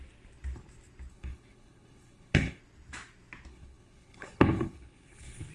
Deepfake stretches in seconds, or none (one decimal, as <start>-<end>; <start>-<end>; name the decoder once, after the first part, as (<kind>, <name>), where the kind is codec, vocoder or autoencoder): 1.1-2.6 (codec, HILCodec); 3.5-5.5